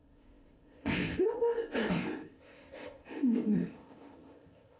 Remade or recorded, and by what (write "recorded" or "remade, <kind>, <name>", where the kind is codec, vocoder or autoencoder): remade, codec, ZipCodec